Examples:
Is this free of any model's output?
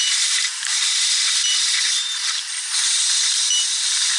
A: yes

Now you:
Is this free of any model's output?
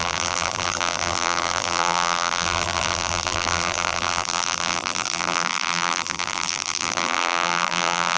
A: no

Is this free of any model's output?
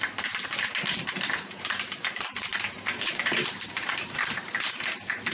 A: no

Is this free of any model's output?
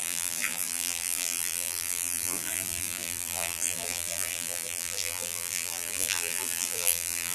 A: no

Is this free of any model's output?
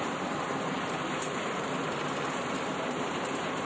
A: no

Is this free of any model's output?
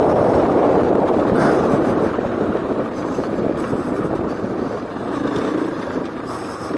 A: no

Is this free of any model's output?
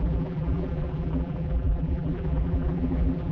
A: no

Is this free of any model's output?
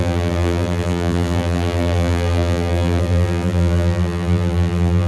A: no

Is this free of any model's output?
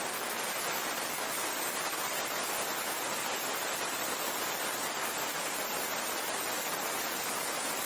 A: yes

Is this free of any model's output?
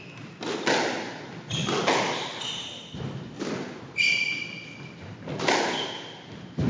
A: yes